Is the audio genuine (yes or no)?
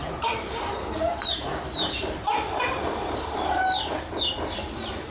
yes